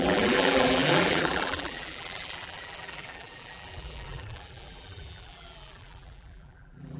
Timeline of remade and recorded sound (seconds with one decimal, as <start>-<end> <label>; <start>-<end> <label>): 0.0-7.0 remade